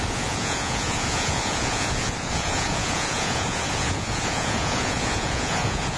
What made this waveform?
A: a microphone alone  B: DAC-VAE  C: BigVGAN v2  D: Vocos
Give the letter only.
D